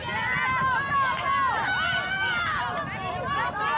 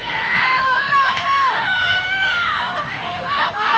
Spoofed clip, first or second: second